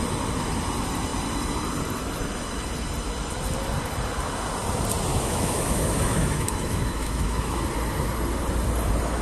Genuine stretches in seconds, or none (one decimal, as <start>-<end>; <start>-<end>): 0.0-5.1; 7.6-9.2